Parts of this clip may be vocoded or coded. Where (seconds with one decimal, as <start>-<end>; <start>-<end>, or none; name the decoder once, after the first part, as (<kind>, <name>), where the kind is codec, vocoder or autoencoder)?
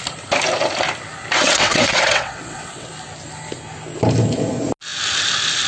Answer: 1.4-2.9 (vocoder, WaveNeXt)